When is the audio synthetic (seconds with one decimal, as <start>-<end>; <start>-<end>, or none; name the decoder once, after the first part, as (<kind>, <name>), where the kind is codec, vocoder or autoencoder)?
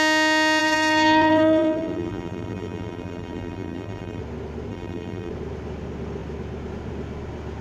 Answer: 0.6-4.2 (vocoder, BigVGAN v2); 4.7-5.3